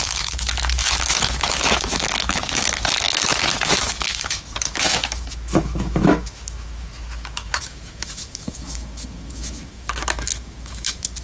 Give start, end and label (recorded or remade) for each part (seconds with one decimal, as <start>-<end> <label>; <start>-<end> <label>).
0.0-11.2 remade